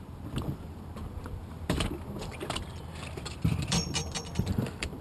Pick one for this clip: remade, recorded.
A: remade